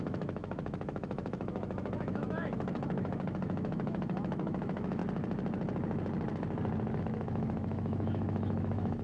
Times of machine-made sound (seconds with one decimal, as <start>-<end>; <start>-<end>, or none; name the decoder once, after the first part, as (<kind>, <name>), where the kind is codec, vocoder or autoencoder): 0.0-5.0 (autoencoder, DAC-VAE); 7.0-9.0